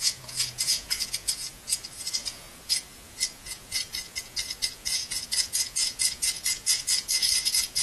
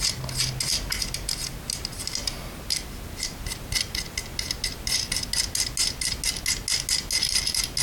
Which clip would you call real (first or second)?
second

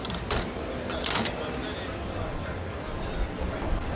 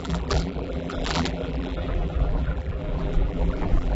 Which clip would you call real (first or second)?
first